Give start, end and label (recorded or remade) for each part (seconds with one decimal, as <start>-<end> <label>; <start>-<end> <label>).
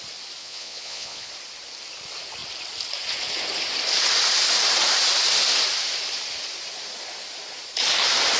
0.0-0.4 recorded; 0.4-1.3 remade; 1.3-8.4 recorded